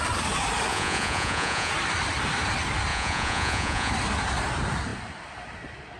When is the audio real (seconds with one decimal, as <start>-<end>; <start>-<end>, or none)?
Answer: 0.0-0.7; 1.7-2.9; 3.9-6.0